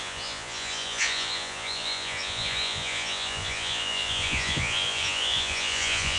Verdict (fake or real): fake